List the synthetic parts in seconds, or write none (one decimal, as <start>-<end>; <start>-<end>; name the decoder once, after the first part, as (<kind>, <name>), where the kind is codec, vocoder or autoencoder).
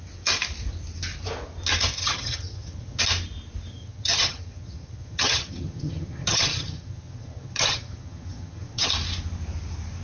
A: 2.0-3.0 (vocoder, HiFi-GAN); 3.7-8.9